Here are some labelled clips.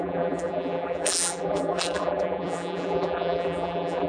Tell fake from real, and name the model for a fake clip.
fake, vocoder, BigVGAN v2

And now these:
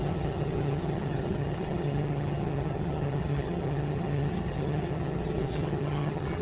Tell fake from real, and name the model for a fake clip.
fake, vocoder, HiFi-GAN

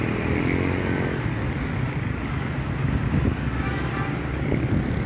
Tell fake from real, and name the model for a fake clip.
real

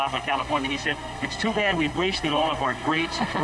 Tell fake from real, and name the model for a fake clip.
fake, codec, SNAC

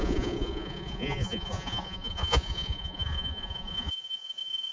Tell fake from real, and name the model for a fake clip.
fake, vocoder, Vocos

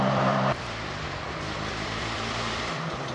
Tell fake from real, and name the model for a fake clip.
fake, vocoder, BigVGAN v2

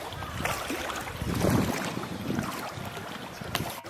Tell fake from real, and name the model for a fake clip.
real